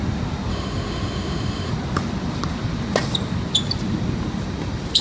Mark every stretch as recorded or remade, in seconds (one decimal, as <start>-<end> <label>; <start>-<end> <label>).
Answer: 0.0-0.5 recorded; 0.5-1.7 remade; 1.7-5.0 recorded